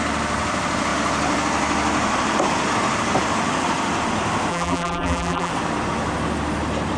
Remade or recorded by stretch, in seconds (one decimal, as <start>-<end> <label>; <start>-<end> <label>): 0.0-4.5 recorded; 4.5-5.5 remade; 5.5-7.0 recorded